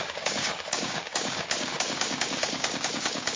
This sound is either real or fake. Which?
fake